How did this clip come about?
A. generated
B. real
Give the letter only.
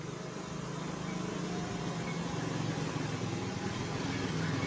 B